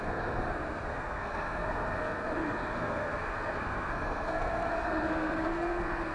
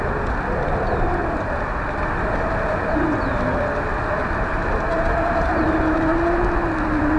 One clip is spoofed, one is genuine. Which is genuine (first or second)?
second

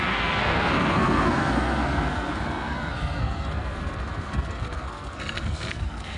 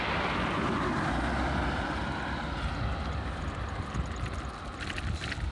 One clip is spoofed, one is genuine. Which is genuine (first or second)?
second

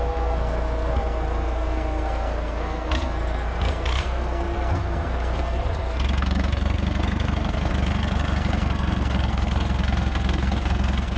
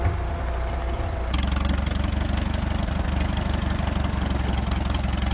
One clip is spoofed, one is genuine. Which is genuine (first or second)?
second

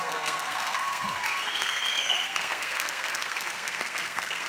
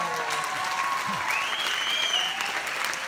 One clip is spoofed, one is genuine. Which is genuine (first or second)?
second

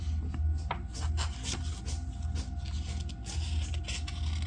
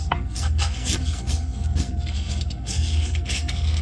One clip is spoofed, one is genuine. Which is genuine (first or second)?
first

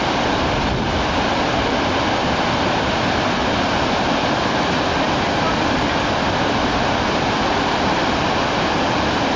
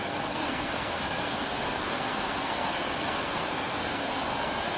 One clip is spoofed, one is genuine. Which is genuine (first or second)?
first